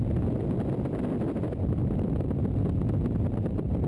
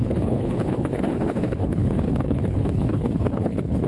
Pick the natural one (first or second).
first